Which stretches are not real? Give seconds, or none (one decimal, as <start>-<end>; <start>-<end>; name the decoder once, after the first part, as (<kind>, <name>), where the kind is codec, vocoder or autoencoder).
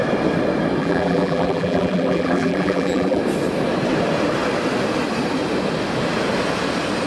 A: 0.8-3.2 (vocoder, BigVGAN v2)